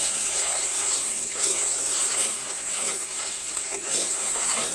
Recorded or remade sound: remade